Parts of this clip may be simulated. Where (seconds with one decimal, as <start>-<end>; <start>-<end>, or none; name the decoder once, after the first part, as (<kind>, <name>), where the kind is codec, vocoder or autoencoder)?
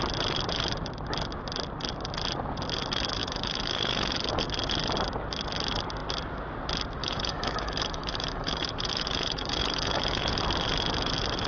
3.2-4.4 (autoencoder, DAC-VAE); 7.0-10.4